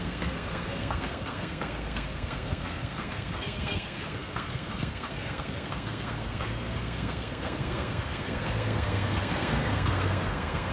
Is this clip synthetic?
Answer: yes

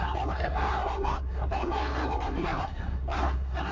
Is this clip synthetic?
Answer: yes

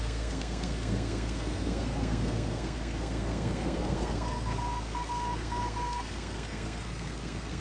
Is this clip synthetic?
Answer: yes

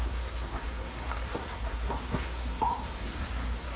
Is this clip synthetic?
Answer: yes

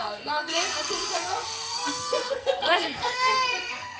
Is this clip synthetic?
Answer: yes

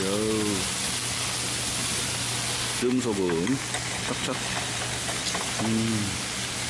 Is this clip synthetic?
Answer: no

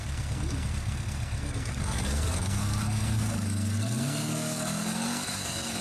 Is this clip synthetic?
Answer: yes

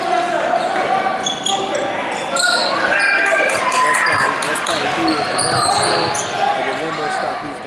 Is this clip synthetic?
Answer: no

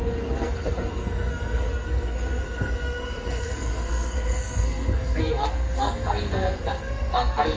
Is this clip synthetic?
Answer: yes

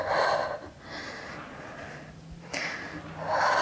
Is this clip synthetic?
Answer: no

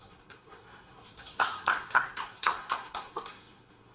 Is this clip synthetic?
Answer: yes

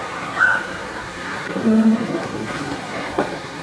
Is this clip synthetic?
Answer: yes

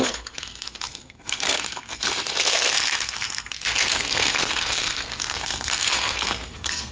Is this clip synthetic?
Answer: yes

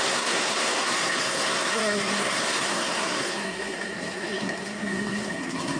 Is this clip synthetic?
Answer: yes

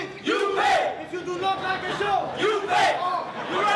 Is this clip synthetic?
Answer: no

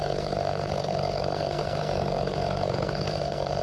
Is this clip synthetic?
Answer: yes